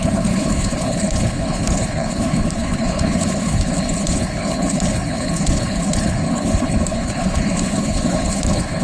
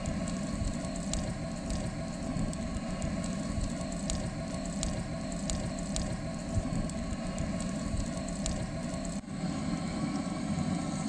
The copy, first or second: first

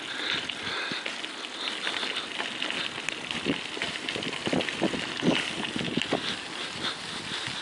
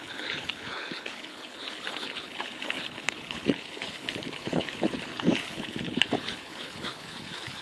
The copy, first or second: second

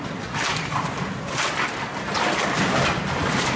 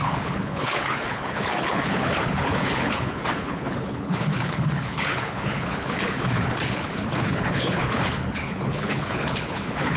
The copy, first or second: second